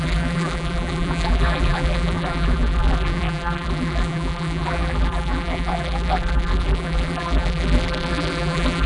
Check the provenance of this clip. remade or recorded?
remade